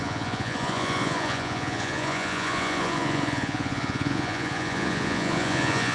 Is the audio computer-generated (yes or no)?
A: yes